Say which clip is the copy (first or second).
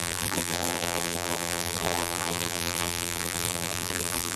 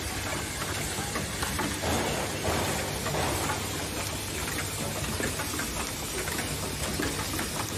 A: first